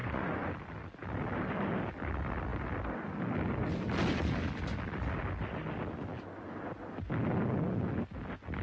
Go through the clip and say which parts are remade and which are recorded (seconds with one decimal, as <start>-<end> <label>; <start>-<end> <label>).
0.0-0.5 remade; 0.5-8.6 recorded